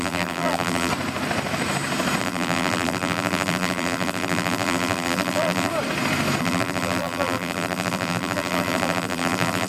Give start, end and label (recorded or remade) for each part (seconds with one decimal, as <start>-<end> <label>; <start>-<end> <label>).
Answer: 0.0-0.9 remade; 0.9-2.2 recorded; 2.2-5.7 remade; 5.7-6.4 recorded; 6.4-9.7 remade